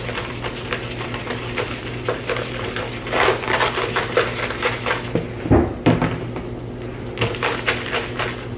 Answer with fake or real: real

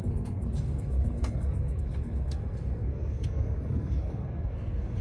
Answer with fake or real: fake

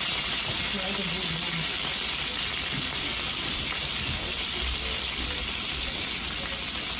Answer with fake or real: real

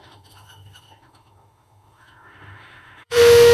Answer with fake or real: fake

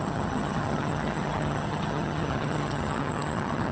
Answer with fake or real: fake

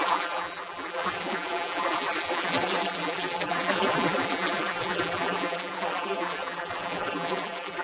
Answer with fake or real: fake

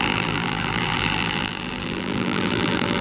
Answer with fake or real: fake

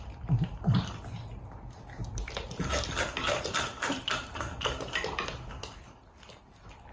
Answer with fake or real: real